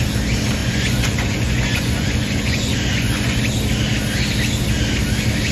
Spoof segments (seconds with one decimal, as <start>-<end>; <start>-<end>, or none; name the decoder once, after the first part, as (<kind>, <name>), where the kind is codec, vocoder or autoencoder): 0.6-3.4 (vocoder, Vocos)

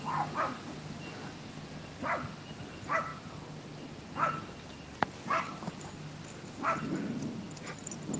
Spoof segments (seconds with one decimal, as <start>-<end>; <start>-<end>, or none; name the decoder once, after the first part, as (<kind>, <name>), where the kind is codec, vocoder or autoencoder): none

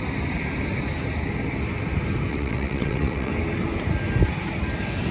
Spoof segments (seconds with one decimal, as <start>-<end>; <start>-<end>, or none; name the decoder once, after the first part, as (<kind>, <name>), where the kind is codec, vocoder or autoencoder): 2.3-3.3 (vocoder, WaveNeXt)

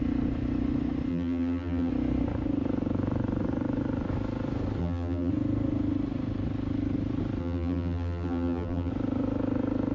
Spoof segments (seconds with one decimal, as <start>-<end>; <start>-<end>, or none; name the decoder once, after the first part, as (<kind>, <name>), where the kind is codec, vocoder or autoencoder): 1.1-1.9 (vocoder, BigVGAN v2); 4.8-5.3; 7.4-8.9

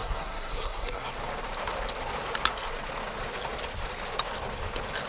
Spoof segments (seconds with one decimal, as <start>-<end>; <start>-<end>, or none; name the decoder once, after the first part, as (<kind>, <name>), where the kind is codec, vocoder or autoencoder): 0.0-1.1 (codec, SNAC)

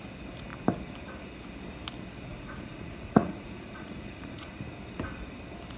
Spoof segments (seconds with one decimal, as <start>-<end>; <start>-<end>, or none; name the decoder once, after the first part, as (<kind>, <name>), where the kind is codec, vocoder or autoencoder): 2.3-4.6 (vocoder, Vocos)

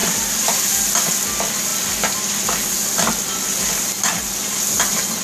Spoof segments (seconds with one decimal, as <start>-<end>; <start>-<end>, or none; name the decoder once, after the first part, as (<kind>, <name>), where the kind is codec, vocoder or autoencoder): none